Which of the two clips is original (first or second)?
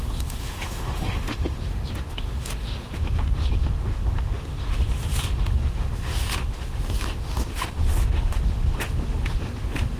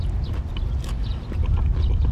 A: second